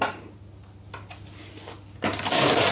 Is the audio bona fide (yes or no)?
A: yes